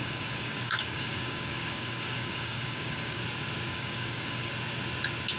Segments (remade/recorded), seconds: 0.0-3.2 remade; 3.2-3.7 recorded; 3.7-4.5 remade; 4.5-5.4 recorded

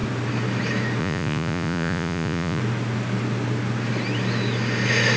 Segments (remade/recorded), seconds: 0.0-1.0 recorded; 1.0-2.6 remade; 2.6-5.2 recorded